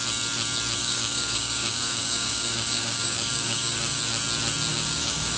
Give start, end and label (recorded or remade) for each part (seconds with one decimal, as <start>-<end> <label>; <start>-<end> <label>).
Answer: 0.0-0.8 recorded; 0.8-4.0 remade; 4.0-4.7 recorded; 4.7-5.4 remade